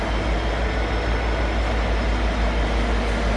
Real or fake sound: real